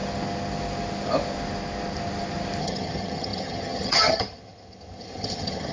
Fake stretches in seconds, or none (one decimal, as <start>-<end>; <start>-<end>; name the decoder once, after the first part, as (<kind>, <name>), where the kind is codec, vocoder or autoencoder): 2.6-5.7 (vocoder, HiFi-GAN)